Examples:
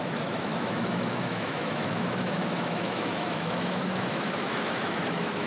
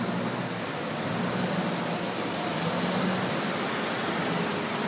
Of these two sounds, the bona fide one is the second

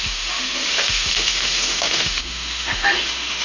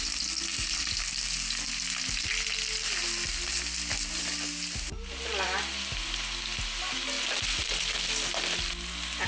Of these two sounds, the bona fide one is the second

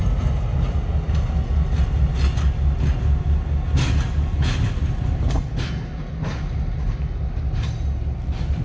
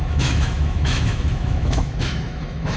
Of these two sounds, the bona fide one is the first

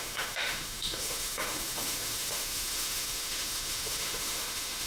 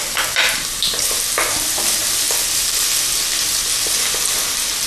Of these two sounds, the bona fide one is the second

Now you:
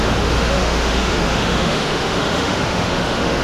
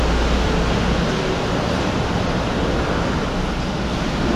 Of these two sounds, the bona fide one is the second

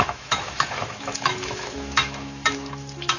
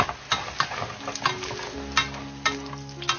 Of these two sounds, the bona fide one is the second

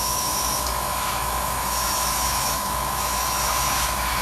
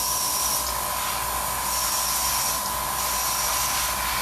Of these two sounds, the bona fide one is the second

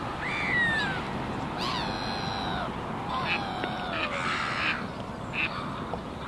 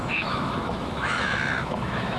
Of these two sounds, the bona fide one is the first